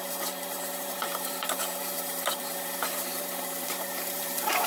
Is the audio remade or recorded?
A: remade